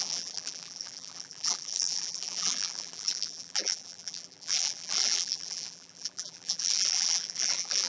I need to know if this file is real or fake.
fake